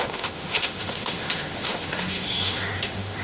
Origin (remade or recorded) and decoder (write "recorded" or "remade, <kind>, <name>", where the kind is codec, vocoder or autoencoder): remade, autoencoder, DAC-VAE